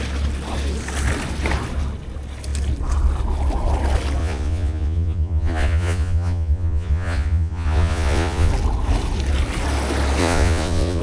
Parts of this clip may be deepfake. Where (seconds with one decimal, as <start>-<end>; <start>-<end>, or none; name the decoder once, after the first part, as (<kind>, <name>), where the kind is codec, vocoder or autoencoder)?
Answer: 4.2-8.5 (vocoder, Vocos); 10.2-11.0